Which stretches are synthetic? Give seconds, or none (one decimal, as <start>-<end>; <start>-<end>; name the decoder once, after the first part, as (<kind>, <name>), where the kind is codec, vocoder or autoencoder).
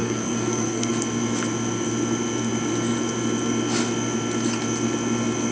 0.0-0.9 (codec, SNAC)